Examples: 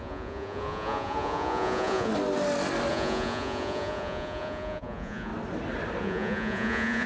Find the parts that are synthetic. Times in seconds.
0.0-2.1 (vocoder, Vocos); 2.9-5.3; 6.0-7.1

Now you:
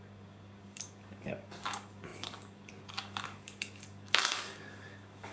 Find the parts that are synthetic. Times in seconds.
0.0-5.3 (codec, DAC)

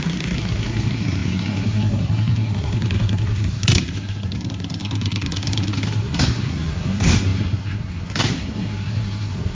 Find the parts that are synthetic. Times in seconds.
0.0-9.5 (codec, SNAC)